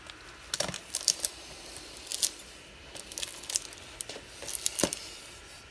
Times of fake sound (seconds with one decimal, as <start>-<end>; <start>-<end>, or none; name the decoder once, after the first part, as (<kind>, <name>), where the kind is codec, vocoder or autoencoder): none